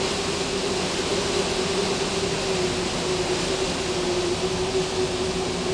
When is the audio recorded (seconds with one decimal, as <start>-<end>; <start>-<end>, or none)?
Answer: 0.0-5.7